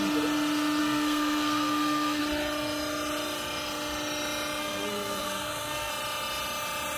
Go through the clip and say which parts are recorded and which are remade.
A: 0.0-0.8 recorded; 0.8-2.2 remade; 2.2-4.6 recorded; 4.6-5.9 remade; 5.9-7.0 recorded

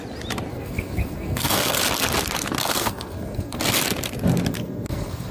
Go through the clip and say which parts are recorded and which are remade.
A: 0.0-0.5 recorded; 0.5-1.8 remade; 1.8-2.6 recorded; 2.6-3.6 remade; 3.6-4.5 recorded; 4.5-5.3 remade